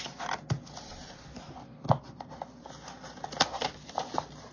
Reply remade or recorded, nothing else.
recorded